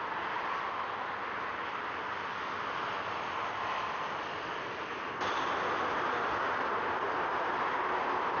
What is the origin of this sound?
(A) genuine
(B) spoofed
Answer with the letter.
A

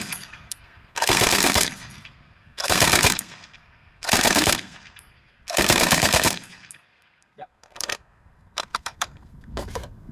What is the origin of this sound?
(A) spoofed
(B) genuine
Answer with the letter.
A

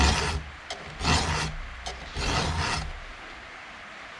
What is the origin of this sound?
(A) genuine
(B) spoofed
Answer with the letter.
A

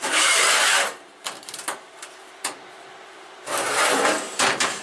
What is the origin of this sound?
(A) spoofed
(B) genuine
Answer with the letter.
A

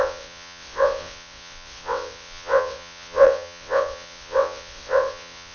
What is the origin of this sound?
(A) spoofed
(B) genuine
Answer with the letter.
A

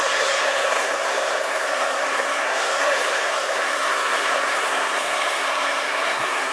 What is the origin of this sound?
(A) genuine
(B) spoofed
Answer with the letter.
B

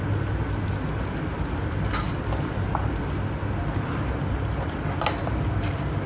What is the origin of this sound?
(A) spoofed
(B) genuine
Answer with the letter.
B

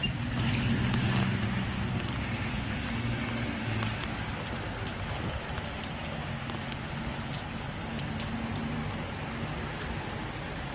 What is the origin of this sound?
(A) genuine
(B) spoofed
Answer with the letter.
A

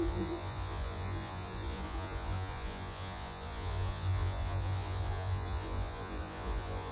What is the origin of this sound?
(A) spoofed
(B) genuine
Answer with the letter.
A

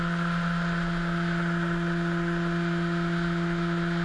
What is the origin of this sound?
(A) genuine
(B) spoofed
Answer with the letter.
A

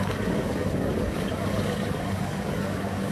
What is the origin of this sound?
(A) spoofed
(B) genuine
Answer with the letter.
A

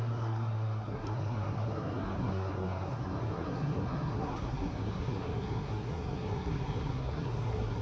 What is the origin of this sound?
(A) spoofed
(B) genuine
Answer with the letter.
A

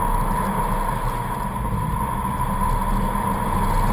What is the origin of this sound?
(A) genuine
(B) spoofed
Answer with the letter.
A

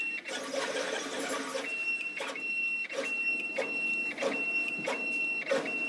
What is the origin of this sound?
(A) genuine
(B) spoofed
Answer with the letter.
A